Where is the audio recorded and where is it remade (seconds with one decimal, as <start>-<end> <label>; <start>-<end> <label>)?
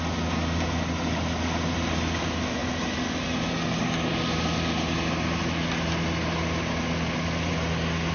0.0-8.1 recorded